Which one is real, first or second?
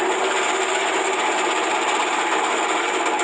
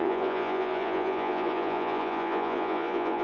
first